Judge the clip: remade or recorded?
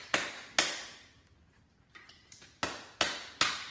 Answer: recorded